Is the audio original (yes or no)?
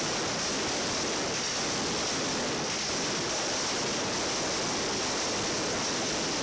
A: yes